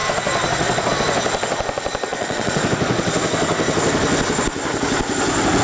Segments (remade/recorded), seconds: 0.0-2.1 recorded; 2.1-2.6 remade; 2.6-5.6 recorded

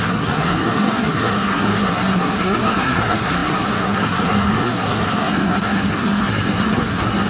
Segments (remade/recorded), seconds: 0.0-7.3 remade